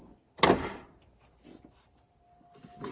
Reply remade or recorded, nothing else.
recorded